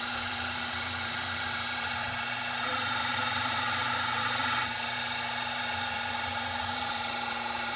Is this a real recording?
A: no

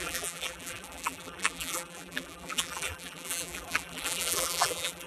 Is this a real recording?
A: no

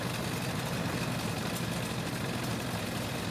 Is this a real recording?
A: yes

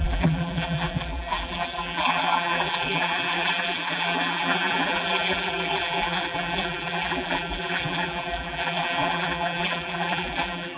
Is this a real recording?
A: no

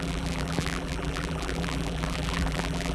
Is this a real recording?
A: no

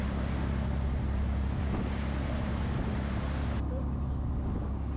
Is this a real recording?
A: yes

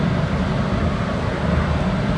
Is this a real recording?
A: yes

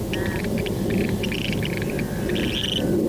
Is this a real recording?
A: no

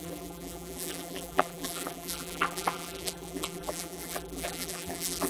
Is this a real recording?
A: no